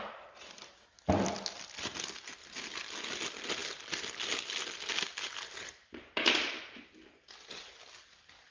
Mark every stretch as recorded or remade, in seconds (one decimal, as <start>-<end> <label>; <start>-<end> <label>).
0.0-8.5 recorded